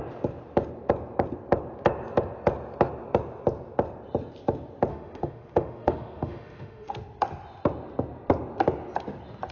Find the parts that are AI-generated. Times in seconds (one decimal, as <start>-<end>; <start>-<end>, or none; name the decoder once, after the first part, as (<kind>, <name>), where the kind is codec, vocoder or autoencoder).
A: 4.9-6.9 (autoencoder, DAC-VAE)